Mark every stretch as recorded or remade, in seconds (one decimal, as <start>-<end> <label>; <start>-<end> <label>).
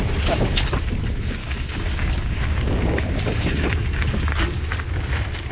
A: 0.0-1.4 recorded; 1.4-4.7 remade; 4.7-5.5 recorded